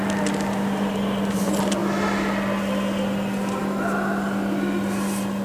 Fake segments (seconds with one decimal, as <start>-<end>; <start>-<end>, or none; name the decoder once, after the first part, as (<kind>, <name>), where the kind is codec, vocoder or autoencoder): none